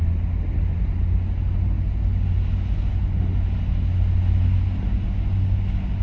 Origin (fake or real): real